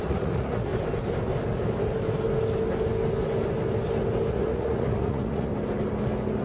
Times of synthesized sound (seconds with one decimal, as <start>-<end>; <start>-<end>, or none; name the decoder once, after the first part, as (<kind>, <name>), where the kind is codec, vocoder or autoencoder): 0.0-0.7 (vocoder, Vocos); 4.3-5.5